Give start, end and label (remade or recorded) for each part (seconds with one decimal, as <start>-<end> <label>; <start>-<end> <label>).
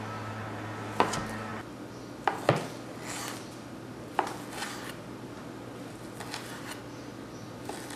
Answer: 0.0-8.0 recorded